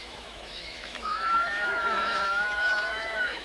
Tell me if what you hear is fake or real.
fake